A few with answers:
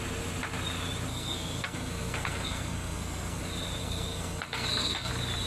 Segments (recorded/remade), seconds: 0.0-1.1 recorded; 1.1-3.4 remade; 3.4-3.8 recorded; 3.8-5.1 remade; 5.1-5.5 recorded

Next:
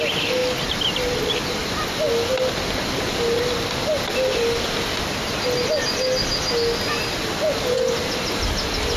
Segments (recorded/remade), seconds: 0.0-9.0 recorded

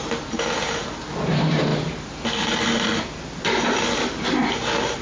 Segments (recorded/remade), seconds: 0.0-5.0 recorded

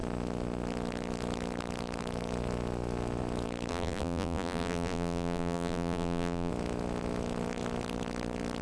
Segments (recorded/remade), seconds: 0.0-3.7 recorded; 3.7-6.5 remade; 6.5-8.6 recorded

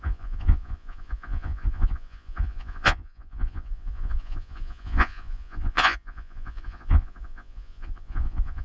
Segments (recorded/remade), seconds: 0.0-8.6 remade